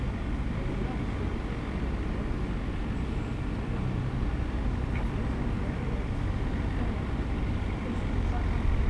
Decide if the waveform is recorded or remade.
recorded